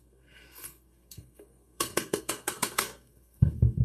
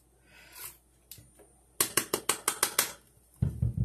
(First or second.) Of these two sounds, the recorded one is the second